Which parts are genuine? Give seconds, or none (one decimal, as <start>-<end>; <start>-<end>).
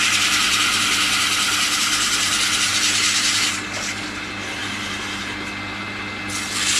0.0-6.8